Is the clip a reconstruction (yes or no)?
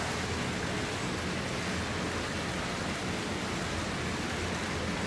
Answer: no